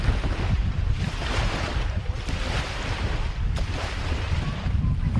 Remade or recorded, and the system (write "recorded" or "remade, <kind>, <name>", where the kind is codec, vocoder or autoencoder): remade, vocoder, BigVGAN v2